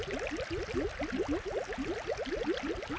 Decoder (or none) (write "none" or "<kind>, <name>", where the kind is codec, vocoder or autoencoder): none